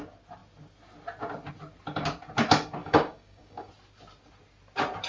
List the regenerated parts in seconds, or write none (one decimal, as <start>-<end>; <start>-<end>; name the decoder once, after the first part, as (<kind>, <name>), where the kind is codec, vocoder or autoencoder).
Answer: 2.8-3.7 (codec, DAC)